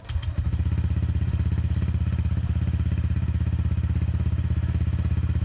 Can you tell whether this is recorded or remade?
recorded